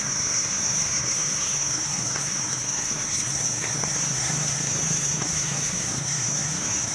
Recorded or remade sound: remade